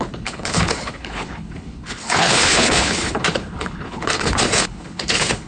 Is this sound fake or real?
fake